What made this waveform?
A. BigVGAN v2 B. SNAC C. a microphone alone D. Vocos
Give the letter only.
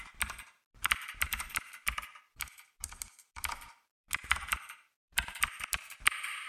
A